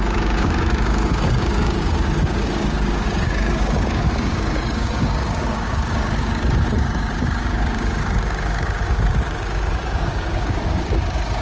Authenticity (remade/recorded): remade